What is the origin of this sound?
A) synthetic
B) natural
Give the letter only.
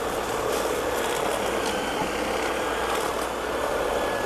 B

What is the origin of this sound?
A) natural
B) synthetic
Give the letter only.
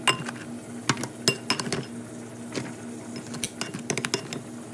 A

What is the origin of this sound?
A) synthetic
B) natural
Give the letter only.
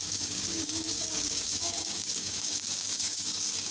A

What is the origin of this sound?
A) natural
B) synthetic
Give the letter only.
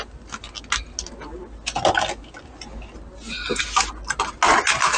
A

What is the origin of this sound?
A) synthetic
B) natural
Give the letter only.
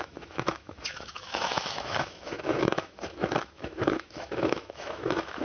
A